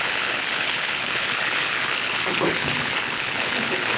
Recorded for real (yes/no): no